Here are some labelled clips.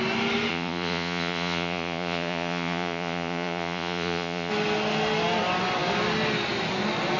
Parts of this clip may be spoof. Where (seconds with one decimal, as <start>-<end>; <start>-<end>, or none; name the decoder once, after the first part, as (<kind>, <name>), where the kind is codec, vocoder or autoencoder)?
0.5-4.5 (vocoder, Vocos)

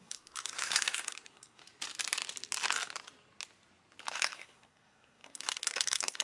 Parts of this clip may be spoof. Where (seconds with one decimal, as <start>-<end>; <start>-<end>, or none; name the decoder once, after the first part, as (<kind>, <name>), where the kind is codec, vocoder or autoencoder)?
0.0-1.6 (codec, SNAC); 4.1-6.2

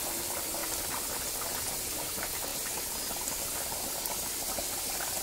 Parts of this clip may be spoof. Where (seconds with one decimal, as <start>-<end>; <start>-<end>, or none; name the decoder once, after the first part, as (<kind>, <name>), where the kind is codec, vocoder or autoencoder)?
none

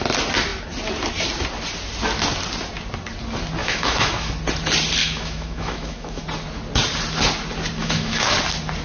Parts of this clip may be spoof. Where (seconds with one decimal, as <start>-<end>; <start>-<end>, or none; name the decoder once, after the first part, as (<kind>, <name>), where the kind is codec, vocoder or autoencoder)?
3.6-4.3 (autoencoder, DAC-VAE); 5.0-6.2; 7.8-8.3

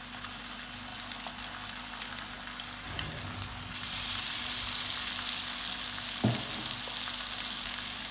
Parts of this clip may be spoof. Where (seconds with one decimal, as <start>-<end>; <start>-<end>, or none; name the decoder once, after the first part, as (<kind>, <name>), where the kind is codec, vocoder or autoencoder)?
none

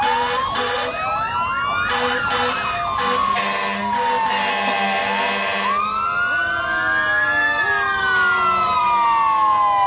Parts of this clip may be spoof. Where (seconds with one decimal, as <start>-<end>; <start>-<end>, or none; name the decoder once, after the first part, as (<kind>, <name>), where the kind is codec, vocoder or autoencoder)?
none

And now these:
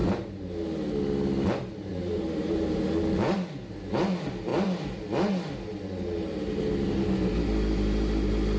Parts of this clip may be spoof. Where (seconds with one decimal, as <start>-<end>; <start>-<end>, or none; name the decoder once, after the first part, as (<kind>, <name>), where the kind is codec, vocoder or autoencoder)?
0.0-0.5 (vocoder, BigVGAN v2); 1.9-2.8